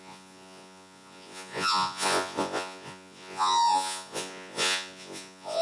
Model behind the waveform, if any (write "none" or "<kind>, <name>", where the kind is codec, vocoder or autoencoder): vocoder, Vocos